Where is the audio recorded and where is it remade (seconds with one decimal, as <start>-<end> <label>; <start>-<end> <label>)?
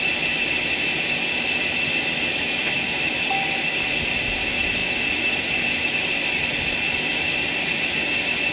0.0-2.3 recorded; 2.3-2.9 remade; 2.9-8.5 recorded